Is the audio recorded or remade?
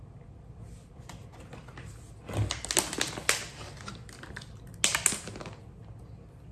recorded